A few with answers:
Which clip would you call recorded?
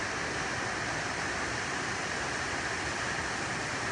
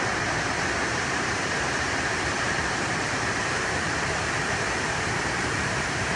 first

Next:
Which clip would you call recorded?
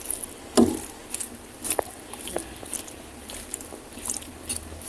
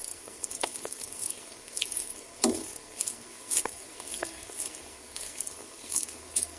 first